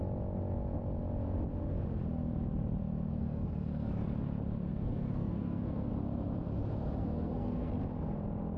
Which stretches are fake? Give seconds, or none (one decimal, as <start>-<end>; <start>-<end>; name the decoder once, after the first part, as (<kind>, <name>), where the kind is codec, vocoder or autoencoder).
3.1-3.9 (codec, SNAC); 4.7-5.9; 7.0-7.7